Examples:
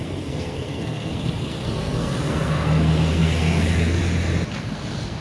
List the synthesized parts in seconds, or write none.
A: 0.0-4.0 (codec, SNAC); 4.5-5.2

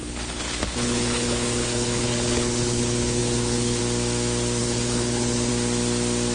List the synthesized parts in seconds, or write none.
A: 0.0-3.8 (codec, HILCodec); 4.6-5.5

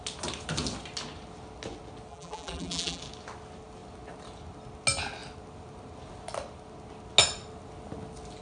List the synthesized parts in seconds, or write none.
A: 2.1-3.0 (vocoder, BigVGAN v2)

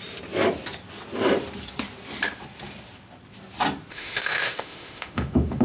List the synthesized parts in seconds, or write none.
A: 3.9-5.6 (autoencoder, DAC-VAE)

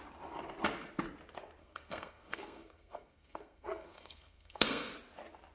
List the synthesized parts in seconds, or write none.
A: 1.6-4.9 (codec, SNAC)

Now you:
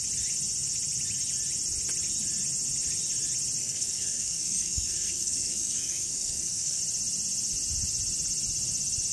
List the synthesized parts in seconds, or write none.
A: 3.6-6.8 (codec, SNAC)